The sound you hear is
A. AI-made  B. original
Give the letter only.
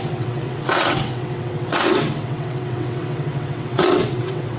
A